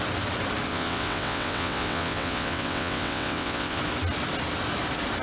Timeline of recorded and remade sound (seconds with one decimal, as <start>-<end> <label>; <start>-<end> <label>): 0.0-0.7 recorded; 0.7-3.8 remade; 3.8-5.2 recorded